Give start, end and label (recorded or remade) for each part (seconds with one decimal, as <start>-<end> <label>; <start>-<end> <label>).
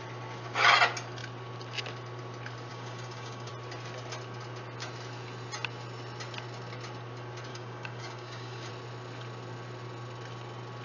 0.0-2.7 recorded; 2.7-3.5 remade; 3.5-7.5 recorded; 7.5-8.7 remade; 8.7-10.8 recorded